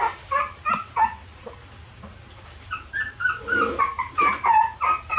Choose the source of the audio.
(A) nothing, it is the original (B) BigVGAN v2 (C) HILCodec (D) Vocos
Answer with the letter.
A